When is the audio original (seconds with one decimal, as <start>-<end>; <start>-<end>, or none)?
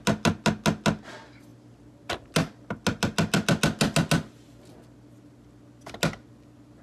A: 0.0-6.8